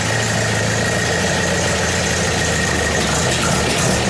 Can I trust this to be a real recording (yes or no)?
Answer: yes